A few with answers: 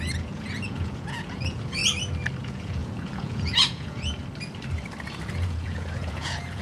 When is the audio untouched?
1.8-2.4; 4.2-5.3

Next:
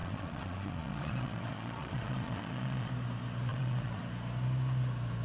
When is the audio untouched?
2.9-3.5; 4.0-5.2